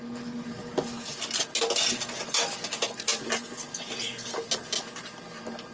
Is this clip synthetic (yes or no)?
no